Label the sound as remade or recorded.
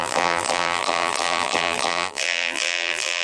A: remade